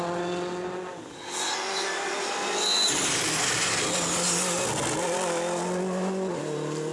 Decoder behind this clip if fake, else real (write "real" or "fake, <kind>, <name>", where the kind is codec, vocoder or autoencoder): real